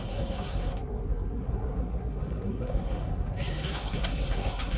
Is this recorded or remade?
remade